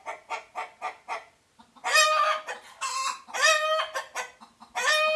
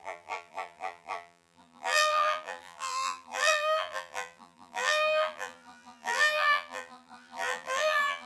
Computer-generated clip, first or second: second